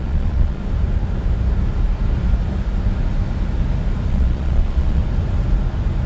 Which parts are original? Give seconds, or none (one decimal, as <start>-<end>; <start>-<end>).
0.6-4.1; 5.0-6.1